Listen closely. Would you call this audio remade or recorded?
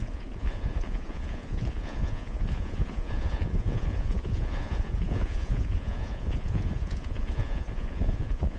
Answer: remade